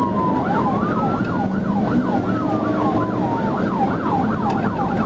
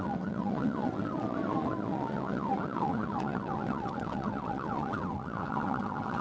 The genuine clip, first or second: first